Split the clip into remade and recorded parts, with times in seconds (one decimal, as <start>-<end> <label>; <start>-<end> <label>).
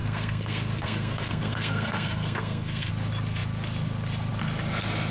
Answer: 0.0-2.9 remade; 2.9-5.1 recorded